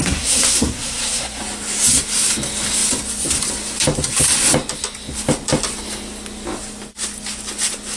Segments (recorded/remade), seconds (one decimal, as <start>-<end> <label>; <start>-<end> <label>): 0.0-1.4 remade; 1.4-8.0 recorded